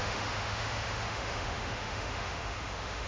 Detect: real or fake fake